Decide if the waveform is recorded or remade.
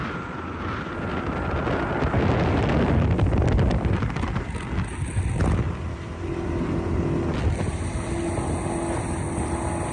recorded